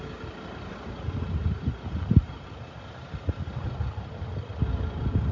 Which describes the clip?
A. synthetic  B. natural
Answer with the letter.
B